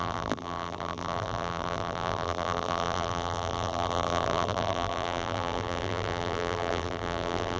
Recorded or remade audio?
remade